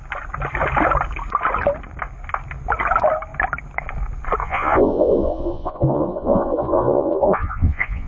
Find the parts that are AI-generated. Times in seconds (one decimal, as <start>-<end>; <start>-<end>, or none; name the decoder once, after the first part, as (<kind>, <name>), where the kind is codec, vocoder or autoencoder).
4.4-8.1 (vocoder, Vocos)